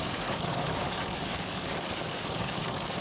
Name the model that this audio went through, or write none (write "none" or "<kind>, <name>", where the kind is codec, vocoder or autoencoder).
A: codec, DAC